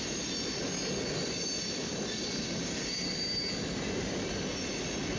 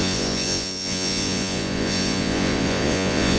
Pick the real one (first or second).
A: first